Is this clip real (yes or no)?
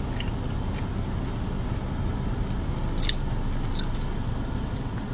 yes